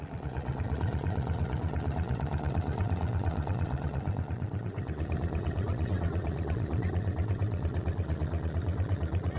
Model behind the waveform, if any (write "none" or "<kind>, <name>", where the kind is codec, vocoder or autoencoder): vocoder, Vocos